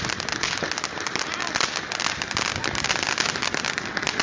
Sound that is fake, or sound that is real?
real